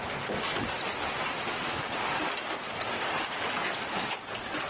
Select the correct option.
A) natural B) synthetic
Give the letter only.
A